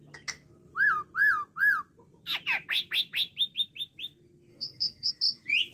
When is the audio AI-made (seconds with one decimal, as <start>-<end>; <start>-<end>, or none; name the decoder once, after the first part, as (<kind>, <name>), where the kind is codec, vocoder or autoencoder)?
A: 4.5-5.1 (codec, SNAC)